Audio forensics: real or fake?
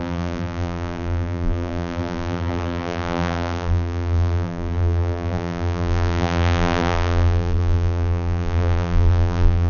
fake